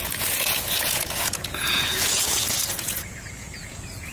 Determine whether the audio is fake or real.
fake